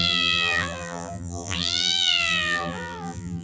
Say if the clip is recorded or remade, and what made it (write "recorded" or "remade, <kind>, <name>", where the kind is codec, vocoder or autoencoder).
remade, vocoder, BigVGAN v2